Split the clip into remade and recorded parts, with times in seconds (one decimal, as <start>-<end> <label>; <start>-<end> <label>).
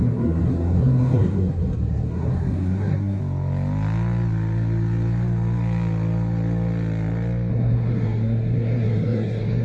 0.0-3.2 remade; 3.2-7.5 recorded; 7.5-9.6 remade